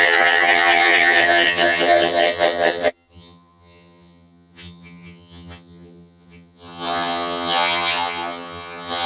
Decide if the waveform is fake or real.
fake